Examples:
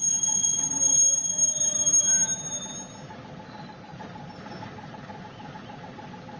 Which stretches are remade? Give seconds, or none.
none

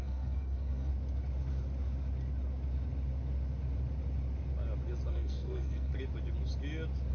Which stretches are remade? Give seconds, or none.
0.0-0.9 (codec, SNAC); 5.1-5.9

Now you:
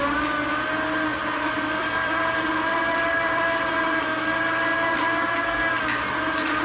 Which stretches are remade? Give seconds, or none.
1.2-3.4 (vocoder, BigVGAN v2)

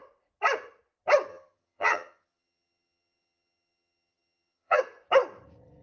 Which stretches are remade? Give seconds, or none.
1.3-4.8 (vocoder, HiFi-GAN)

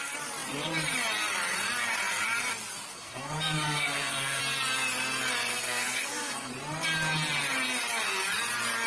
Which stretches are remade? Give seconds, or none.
2.9-4.4 (codec, SNAC); 5.5-6.5